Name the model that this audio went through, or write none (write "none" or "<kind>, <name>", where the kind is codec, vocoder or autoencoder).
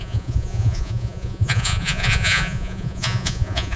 vocoder, Vocos